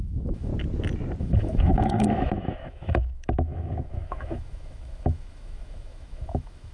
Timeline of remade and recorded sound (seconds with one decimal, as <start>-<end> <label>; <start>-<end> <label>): 0.0-0.5 remade; 0.5-1.2 recorded; 1.2-6.7 remade